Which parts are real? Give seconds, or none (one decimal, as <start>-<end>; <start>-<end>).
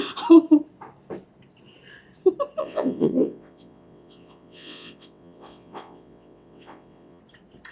0.0-2.6; 7.2-7.7